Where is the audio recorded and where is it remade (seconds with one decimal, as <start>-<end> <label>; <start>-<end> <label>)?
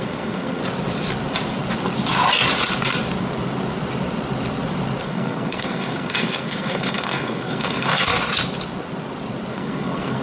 0.0-0.6 remade; 0.6-5.0 recorded; 5.0-8.1 remade; 8.1-9.5 recorded; 9.5-10.2 remade